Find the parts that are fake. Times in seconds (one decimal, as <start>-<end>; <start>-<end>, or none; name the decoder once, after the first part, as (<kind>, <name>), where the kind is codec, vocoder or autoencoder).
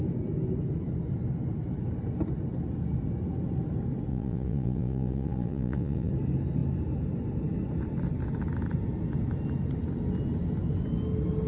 4.1-6.1 (vocoder, Vocos)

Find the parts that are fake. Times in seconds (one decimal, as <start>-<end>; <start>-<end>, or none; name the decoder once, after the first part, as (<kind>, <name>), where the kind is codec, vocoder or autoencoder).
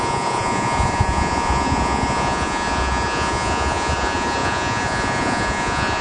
0.0-6.0 (vocoder, Vocos)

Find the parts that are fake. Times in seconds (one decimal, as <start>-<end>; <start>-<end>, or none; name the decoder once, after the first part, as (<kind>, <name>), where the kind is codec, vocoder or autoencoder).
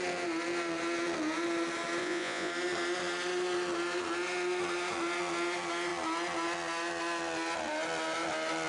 2.0-2.5 (vocoder, Vocos)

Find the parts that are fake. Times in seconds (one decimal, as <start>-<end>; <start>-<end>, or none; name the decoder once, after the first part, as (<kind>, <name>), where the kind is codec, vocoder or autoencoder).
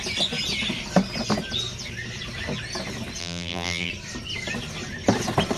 3.2-3.9 (vocoder, BigVGAN v2)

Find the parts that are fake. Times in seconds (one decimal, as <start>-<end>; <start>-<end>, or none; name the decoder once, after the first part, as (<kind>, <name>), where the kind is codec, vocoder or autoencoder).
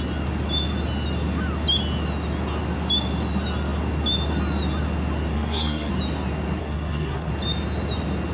5.3-5.9 (codec, SNAC); 6.6-7.3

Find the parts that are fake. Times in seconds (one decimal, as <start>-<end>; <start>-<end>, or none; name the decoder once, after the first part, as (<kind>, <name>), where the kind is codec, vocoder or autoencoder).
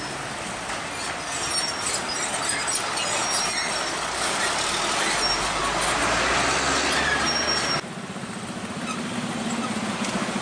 none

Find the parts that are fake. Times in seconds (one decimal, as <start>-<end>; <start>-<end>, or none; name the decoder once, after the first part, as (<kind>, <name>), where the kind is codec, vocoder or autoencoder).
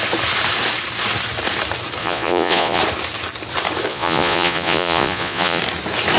2.0-2.8 (vocoder, Vocos); 3.9-5.6